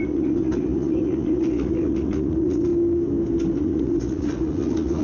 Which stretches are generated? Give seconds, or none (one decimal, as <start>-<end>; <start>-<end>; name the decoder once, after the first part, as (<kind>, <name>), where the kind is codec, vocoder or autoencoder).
0.0-2.7 (vocoder, Vocos); 3.6-5.0